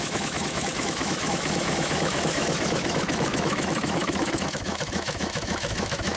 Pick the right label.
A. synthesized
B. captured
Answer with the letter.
A